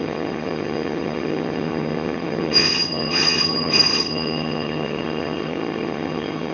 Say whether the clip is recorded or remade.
remade